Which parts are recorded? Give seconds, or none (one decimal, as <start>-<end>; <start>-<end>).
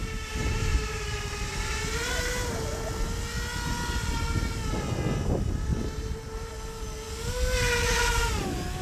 0.0-0.7; 2.5-5.7; 6.5-8.8